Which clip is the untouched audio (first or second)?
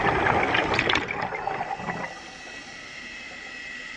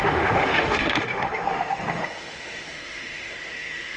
first